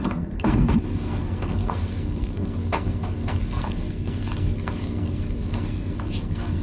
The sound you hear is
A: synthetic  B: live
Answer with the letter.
A